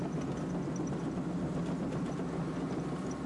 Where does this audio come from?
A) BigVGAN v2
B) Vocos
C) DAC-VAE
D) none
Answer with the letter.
D